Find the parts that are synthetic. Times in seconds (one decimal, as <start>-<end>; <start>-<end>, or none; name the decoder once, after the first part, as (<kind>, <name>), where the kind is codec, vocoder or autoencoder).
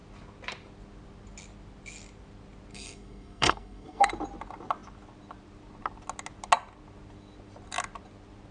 2.7-4.1 (codec, SNAC)